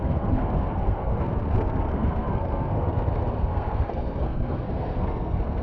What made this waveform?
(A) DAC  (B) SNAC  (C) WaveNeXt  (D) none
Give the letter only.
B